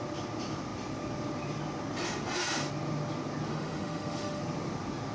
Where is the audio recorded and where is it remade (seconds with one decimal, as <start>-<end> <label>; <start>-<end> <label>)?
0.0-3.5 recorded; 3.5-4.4 remade; 4.4-5.1 recorded